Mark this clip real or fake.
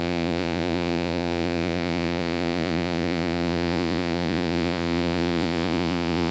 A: fake